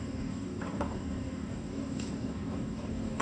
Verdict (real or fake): fake